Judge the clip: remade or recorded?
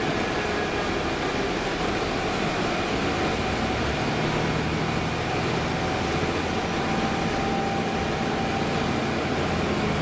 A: recorded